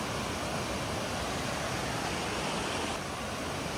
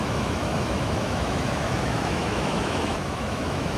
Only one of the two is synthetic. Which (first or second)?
second